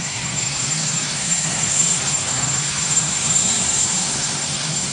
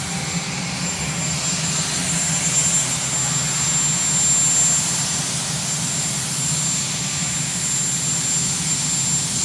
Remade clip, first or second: first